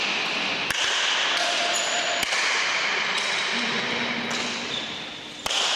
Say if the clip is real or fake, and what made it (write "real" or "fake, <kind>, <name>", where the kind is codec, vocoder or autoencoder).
real